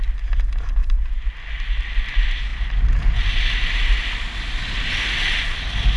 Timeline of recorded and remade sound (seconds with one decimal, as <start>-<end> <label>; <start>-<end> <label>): 0.0-6.0 recorded